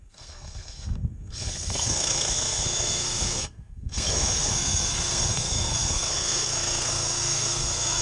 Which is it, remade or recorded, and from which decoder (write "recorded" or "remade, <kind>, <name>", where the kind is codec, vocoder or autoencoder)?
remade, codec, SNAC